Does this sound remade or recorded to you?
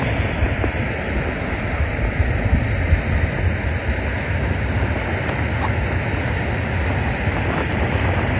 recorded